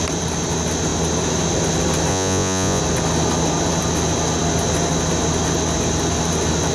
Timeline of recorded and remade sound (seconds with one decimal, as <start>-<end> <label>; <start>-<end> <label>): 0.0-2.1 recorded; 2.1-2.8 remade; 2.8-6.7 recorded